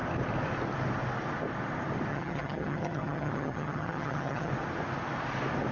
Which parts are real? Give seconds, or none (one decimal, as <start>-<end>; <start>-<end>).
0.0-2.1; 4.5-5.7